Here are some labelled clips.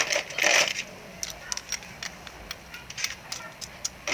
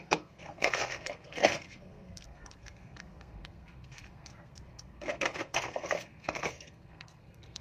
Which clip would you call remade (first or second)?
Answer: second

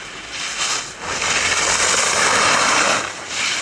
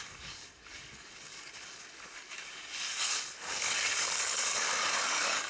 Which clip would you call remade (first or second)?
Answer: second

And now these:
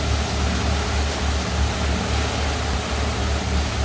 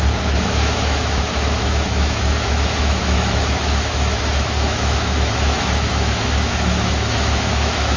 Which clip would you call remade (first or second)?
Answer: second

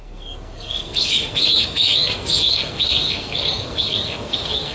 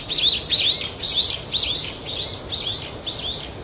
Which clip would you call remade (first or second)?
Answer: first